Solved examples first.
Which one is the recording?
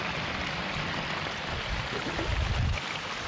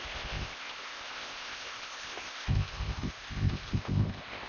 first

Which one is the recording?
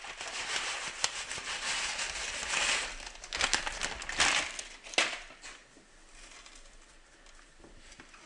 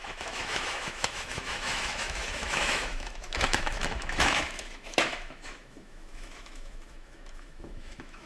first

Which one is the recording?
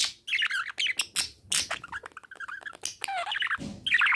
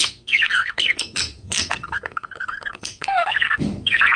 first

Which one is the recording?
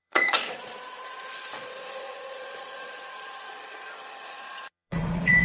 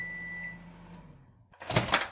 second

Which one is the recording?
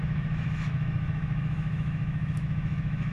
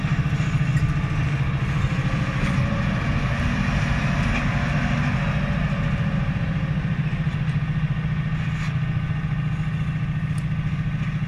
second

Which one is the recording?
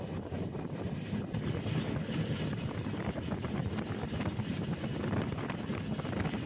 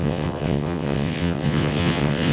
first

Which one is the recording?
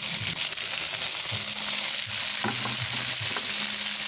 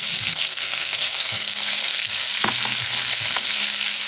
first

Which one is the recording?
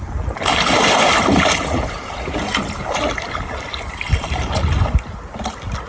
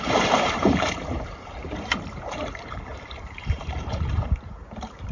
first